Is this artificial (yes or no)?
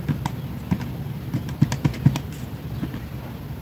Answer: no